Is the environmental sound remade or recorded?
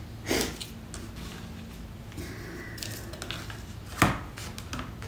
recorded